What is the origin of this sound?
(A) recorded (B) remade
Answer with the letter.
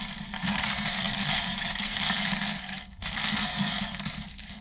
B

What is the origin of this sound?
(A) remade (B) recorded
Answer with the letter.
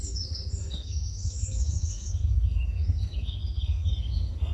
A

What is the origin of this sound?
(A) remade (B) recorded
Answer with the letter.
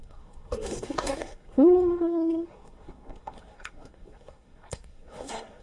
A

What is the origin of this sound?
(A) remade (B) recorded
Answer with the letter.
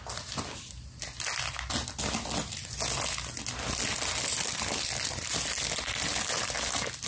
B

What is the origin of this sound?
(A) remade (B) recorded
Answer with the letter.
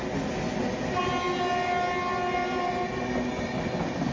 B